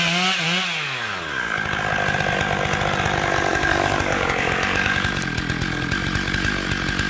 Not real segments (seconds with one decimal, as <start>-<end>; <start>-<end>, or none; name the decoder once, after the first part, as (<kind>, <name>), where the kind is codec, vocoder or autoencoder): 3.5-5.1 (codec, DAC)